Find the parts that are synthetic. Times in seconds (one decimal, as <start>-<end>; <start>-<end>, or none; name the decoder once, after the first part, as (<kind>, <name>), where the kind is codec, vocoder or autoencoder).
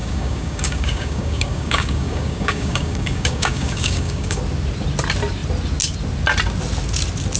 0.0-4.4 (codec, DAC)